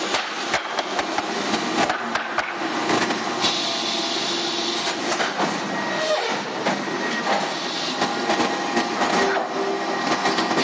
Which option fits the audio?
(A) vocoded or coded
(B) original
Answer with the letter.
B